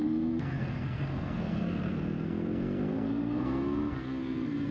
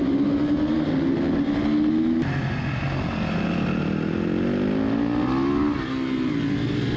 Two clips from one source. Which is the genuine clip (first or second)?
second